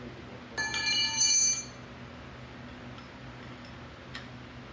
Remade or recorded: recorded